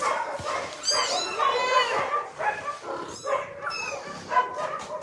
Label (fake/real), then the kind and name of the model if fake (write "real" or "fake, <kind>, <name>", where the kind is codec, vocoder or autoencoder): real